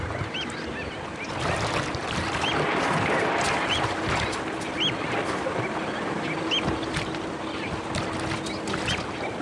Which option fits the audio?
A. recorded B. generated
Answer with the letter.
A